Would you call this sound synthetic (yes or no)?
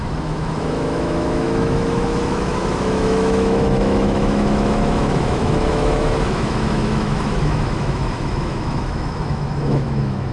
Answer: yes